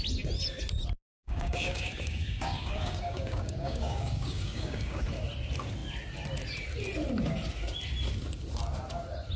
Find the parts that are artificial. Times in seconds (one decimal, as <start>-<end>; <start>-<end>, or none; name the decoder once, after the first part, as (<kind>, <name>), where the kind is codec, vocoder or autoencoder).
1.2-5.0 (codec, DAC)